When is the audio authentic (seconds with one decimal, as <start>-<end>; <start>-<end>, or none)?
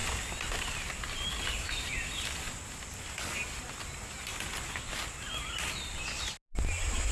0.6-7.1